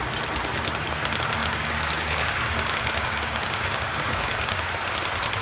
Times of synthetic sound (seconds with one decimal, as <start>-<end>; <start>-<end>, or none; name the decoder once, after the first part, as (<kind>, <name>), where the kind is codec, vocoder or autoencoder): 1.4-4.6 (codec, DAC)